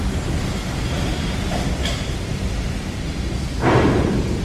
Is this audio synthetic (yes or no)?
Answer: yes